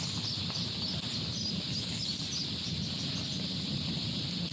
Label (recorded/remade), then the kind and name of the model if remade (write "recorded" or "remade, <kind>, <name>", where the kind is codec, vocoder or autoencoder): recorded